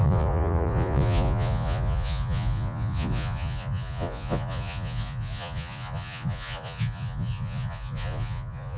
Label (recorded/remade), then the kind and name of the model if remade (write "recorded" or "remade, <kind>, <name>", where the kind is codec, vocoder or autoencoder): remade, vocoder, Vocos